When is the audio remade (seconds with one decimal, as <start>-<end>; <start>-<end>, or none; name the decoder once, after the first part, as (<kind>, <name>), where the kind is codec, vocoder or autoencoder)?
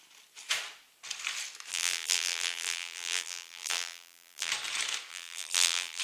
1.7-4.5 (vocoder, BigVGAN v2); 5.1-6.0